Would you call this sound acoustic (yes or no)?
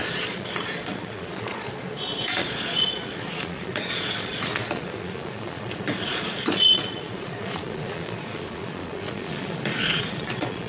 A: no